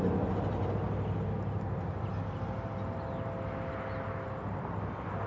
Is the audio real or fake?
real